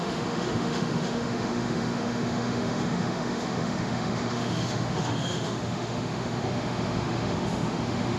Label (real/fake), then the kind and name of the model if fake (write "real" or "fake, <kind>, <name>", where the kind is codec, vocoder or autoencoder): fake, autoencoder, DAC-VAE